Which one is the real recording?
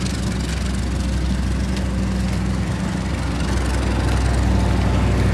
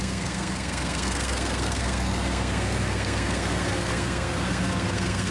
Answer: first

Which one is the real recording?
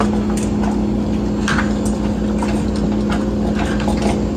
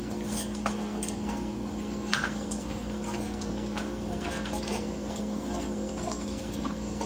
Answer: first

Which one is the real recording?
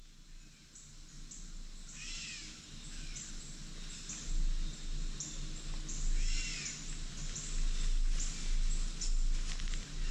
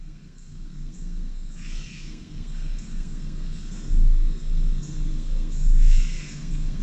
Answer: first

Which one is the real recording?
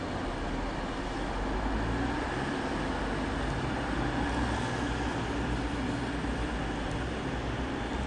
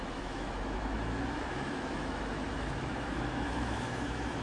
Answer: first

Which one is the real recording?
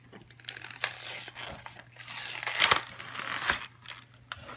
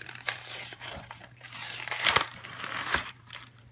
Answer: first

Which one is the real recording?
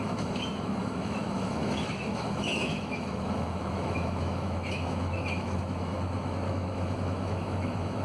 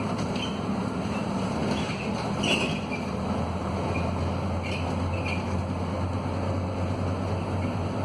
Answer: second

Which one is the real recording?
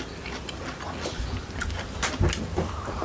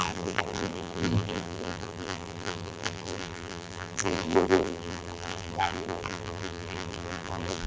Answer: first